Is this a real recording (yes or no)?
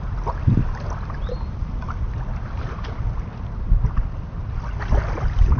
no